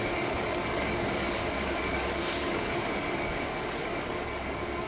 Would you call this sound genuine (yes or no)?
no